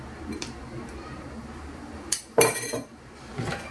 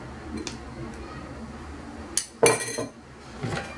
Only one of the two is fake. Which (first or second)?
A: first